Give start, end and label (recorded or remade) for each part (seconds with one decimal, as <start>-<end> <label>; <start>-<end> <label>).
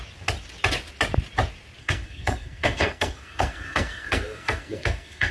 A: 0.0-1.8 recorded; 1.8-5.3 remade